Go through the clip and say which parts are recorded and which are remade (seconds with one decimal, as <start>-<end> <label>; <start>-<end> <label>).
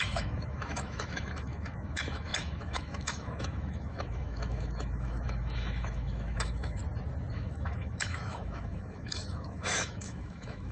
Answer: 0.0-6.8 remade; 6.8-7.3 recorded; 7.3-10.7 remade